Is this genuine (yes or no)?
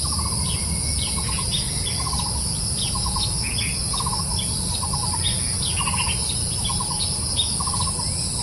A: yes